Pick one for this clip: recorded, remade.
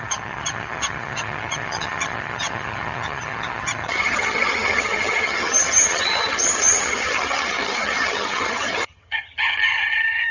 remade